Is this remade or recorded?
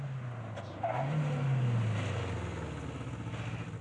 recorded